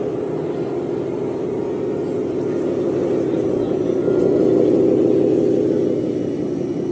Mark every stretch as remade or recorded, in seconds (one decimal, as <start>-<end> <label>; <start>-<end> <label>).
0.0-6.9 recorded